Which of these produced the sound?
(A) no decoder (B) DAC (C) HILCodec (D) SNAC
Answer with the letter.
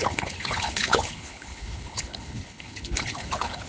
C